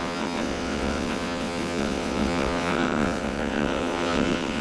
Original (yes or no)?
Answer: no